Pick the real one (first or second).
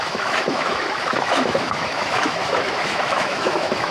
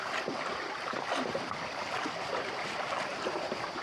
second